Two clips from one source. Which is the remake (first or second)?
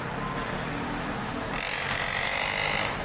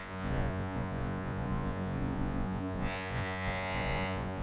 second